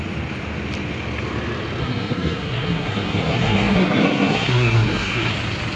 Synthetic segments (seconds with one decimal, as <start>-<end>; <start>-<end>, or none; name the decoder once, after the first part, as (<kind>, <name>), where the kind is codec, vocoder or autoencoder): 1.8-5.3 (codec, SNAC)